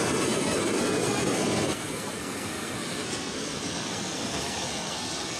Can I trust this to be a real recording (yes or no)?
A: no